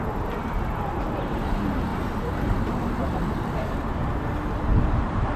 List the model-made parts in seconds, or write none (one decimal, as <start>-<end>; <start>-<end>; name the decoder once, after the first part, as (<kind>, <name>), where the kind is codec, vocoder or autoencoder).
0.0-5.4 (vocoder, BigVGAN v2)